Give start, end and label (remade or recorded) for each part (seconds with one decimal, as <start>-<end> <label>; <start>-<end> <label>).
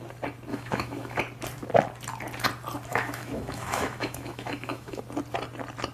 0.0-0.5 recorded; 0.5-1.2 remade; 1.2-2.9 recorded; 2.9-5.0 remade; 5.0-5.9 recorded